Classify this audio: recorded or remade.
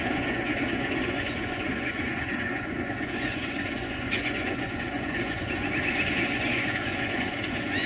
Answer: remade